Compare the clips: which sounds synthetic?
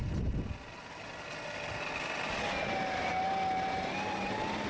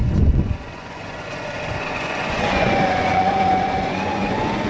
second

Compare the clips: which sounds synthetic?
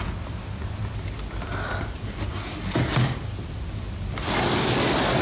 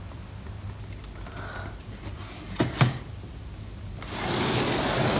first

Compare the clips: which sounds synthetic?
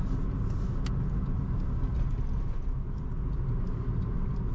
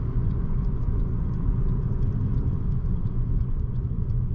second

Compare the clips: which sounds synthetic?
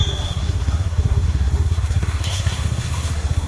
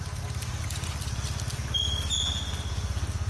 first